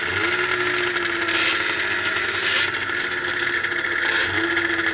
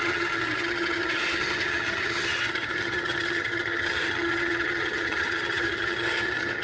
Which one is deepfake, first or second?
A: second